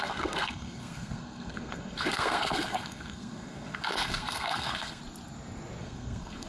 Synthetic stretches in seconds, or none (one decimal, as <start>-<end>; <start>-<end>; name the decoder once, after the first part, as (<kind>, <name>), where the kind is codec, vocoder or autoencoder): 0.0-5.0 (codec, SNAC); 5.8-6.5